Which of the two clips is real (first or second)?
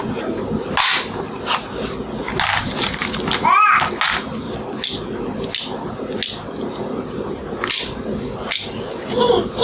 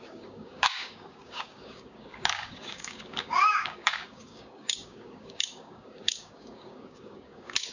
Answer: first